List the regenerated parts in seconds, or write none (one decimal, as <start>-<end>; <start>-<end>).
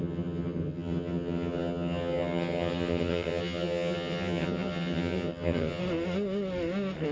0.0-5.8